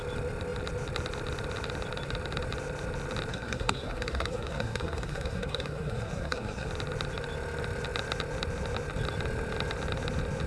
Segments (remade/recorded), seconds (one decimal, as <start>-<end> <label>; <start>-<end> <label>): 0.0-3.3 recorded; 3.3-6.7 remade; 6.7-10.5 recorded